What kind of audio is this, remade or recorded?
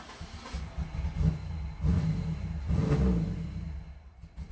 recorded